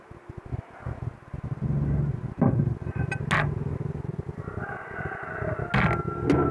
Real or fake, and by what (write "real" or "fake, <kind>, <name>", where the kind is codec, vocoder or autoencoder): real